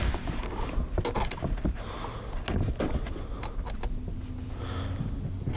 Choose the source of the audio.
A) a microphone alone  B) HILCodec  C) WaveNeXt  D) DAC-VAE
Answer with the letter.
A